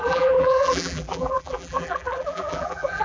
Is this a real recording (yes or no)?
no